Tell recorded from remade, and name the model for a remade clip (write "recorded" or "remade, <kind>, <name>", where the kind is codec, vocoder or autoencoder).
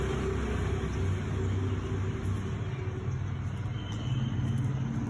recorded